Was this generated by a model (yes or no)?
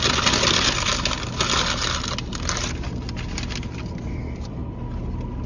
no